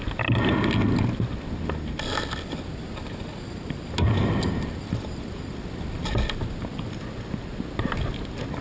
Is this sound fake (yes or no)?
no